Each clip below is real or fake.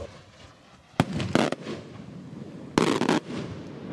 real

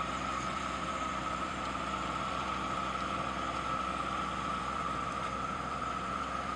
fake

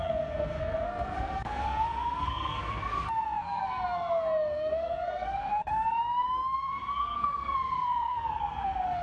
fake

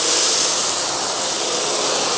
real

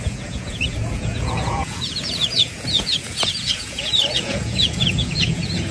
fake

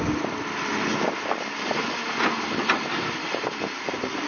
real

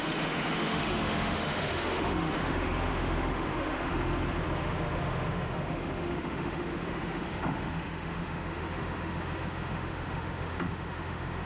fake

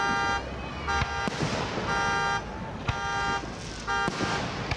real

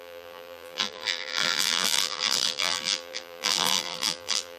fake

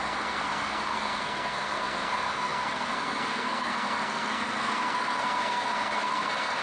fake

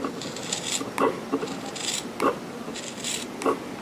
real